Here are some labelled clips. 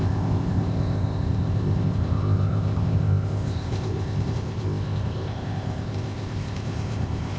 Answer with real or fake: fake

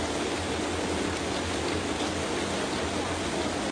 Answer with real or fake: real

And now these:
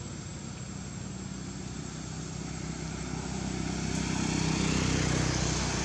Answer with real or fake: real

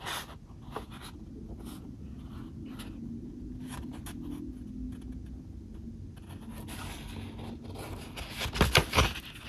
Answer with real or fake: real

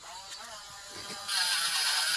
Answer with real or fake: fake